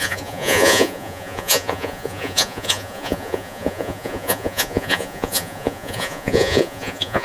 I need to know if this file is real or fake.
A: fake